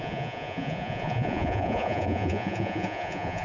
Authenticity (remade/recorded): remade